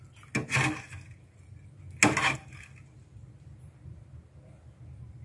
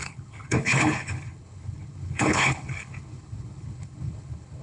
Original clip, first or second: first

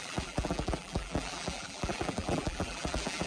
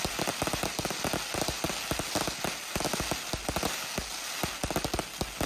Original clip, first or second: second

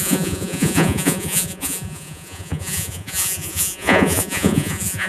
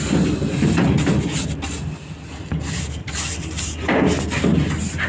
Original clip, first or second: second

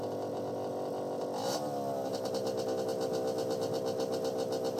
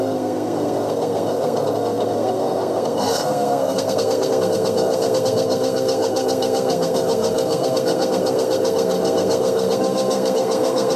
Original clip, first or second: first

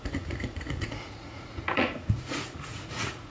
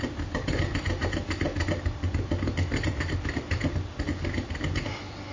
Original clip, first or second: second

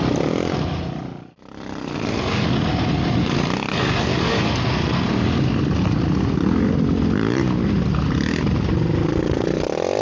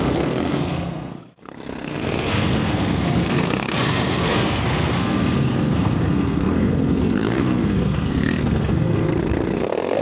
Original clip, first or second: first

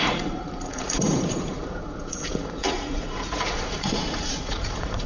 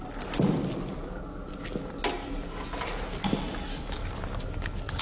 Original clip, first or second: second